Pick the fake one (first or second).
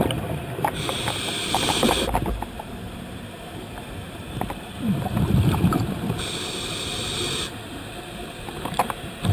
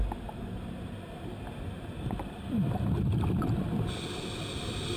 first